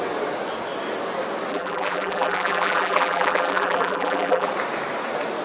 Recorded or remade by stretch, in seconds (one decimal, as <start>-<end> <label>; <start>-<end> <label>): 0.0-1.5 recorded; 1.5-4.5 remade; 4.5-5.4 recorded